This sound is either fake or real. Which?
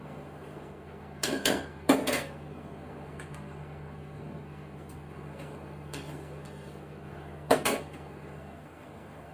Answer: fake